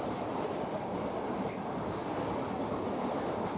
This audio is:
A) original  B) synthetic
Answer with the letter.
A